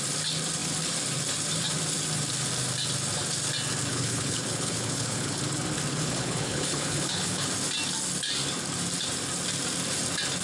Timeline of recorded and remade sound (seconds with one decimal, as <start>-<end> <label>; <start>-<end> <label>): 0.0-3.9 recorded; 3.9-5.4 remade; 5.4-5.9 recorded; 5.9-7.5 remade; 7.5-10.4 recorded